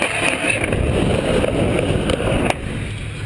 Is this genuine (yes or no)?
yes